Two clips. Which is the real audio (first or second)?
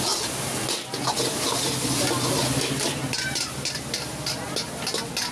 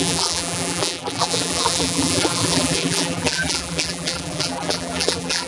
first